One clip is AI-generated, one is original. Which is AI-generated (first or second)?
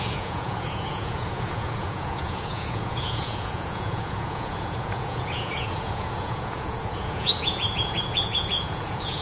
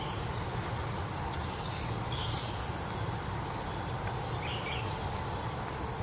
first